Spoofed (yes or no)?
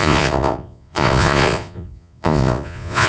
yes